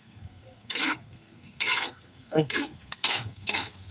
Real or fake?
fake